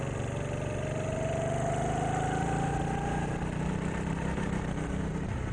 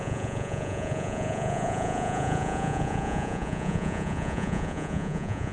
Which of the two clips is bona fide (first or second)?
first